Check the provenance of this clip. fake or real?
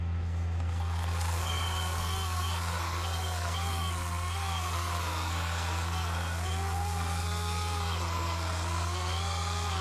fake